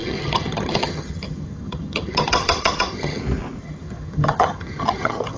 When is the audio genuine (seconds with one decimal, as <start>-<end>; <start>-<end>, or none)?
3.2-3.6